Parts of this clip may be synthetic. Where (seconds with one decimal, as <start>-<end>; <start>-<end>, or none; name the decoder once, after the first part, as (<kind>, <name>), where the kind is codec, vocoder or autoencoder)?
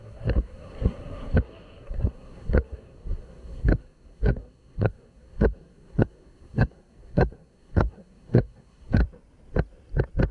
0.0-9.0 (codec, SNAC)